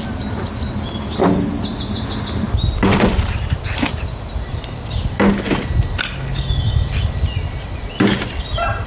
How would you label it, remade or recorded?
recorded